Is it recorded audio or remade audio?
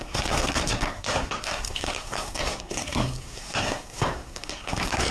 remade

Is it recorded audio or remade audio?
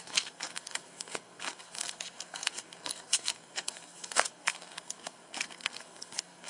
remade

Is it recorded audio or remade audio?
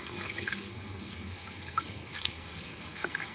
remade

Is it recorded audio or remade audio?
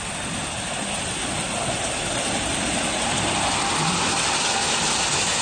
recorded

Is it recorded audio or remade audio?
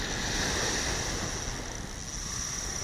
recorded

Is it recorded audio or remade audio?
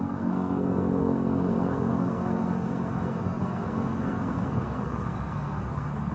remade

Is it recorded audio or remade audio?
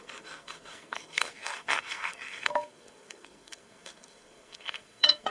remade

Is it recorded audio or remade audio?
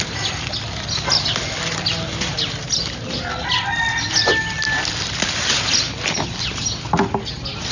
recorded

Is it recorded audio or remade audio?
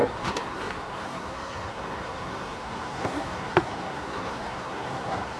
remade